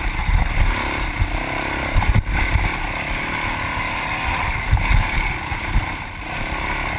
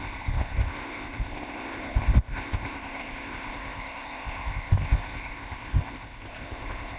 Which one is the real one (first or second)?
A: first